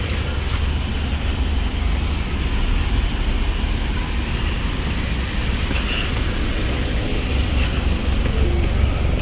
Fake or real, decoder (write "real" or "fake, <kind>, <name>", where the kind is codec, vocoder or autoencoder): real